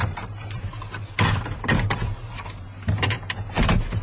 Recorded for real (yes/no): no